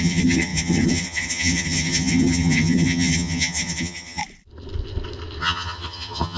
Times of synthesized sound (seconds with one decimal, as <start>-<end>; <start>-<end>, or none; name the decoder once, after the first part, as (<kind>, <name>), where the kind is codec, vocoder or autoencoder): 0.0-4.2 (vocoder, HiFi-GAN); 5.4-6.4